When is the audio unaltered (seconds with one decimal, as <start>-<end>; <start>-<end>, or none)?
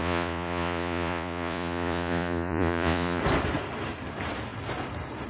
3.2-5.3